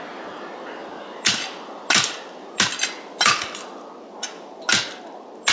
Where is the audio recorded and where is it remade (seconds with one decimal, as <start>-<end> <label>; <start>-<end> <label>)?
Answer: 0.0-5.5 recorded